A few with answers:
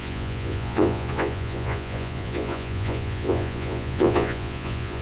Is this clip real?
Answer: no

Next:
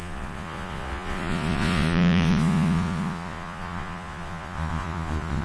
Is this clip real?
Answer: no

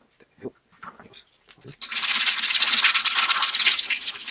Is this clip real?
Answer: yes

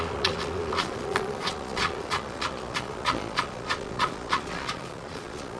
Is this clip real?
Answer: no